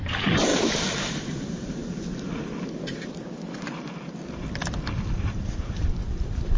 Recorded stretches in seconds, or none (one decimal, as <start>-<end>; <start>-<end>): 0.5-1.1; 1.8-5.3